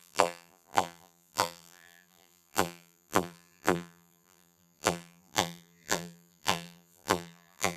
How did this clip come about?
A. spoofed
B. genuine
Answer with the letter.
A